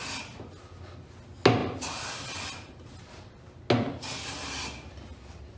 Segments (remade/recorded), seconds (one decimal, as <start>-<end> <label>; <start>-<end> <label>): 0.0-5.6 recorded